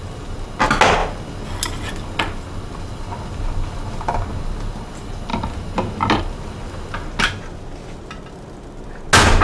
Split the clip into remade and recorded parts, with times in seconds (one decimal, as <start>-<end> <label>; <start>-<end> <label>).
0.0-9.4 recorded